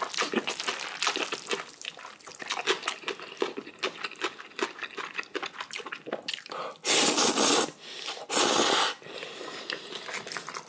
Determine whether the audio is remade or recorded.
recorded